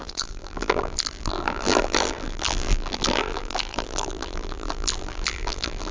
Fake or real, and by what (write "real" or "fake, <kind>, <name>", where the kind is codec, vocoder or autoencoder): fake, vocoder, BigVGAN v2